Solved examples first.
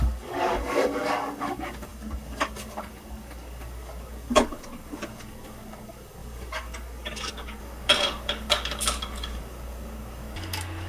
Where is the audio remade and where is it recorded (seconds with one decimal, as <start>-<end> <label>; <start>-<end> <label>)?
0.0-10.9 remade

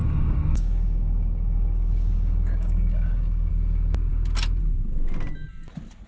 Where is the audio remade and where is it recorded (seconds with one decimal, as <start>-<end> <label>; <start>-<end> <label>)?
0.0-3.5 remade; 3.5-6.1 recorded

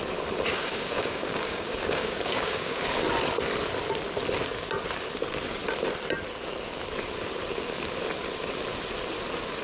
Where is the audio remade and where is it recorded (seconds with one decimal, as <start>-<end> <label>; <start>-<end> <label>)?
0.0-0.5 recorded; 0.5-2.9 remade; 2.9-9.6 recorded